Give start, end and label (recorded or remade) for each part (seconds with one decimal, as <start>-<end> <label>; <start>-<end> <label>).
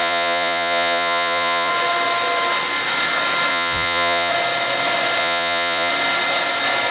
0.0-1.7 remade; 1.7-3.5 recorded; 3.5-4.3 remade; 4.3-5.2 recorded; 5.2-5.9 remade; 5.9-6.9 recorded